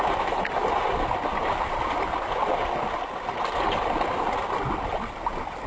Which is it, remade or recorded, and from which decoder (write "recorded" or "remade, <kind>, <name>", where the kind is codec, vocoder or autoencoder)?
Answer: recorded